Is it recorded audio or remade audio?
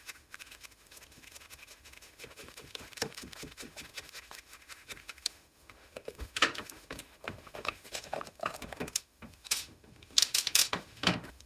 remade